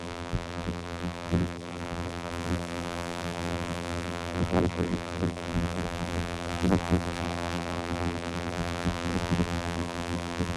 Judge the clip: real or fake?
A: fake